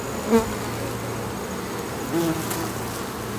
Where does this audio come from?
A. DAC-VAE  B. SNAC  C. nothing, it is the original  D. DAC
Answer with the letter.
C